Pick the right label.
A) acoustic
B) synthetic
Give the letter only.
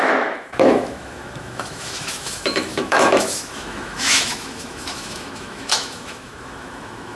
B